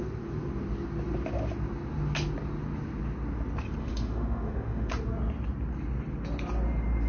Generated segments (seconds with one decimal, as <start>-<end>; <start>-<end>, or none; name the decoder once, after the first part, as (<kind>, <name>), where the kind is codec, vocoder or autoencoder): 3.8-4.9 (autoencoder, DAC-VAE)